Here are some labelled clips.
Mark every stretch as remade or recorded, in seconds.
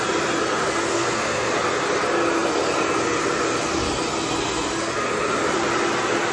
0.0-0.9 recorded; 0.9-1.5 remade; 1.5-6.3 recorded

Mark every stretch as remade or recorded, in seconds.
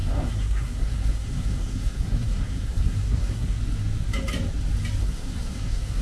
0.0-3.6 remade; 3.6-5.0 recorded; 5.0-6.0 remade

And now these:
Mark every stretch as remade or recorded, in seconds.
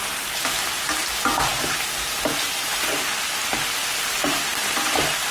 0.0-5.3 recorded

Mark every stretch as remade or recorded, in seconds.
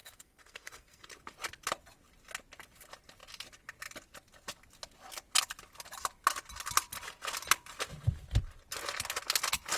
0.0-1.1 remade; 1.1-9.8 recorded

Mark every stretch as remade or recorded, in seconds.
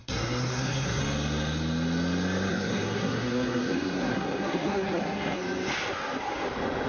0.0-1.0 remade; 1.0-2.5 recorded; 2.5-5.4 remade; 5.4-6.9 recorded